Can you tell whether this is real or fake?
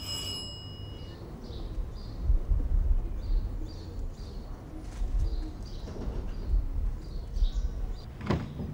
real